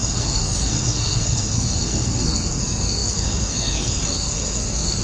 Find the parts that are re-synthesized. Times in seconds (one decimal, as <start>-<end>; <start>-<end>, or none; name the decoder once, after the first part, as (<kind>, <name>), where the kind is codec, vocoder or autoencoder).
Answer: 0.0-5.0 (codec, SNAC)